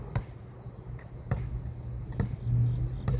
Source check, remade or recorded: recorded